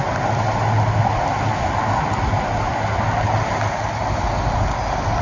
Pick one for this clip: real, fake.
real